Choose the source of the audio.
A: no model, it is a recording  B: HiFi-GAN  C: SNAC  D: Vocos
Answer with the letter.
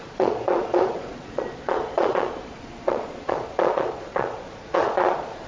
D